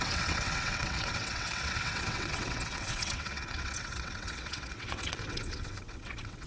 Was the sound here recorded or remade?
remade